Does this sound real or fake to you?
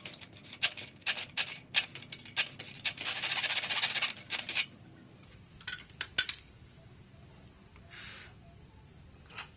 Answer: real